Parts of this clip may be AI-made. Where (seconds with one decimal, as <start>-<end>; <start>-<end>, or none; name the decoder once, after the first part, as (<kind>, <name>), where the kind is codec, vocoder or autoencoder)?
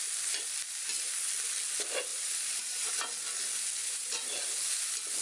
2.1-2.9 (vocoder, BigVGAN v2); 3.8-4.4